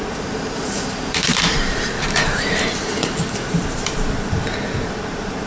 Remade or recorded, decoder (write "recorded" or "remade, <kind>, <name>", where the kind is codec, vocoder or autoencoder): remade, vocoder, BigVGAN v2